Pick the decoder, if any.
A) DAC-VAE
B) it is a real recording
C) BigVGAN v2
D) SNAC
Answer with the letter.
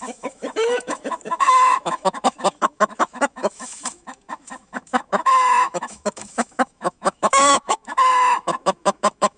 A